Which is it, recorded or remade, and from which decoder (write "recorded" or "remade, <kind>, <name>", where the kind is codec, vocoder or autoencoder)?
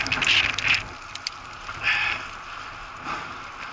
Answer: recorded